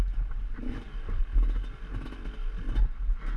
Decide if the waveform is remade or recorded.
recorded